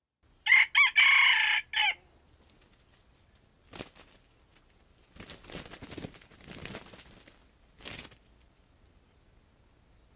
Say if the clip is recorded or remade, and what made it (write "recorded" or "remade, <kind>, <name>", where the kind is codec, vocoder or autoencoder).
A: recorded